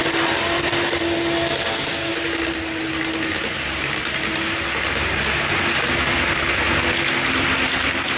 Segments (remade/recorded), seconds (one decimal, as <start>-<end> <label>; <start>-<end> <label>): 0.0-8.2 recorded